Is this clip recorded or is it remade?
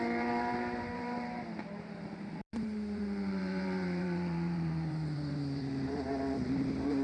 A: remade